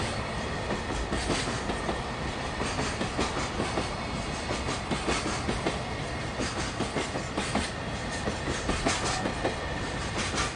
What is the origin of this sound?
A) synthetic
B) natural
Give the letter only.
B